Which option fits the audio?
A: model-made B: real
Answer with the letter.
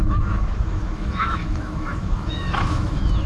A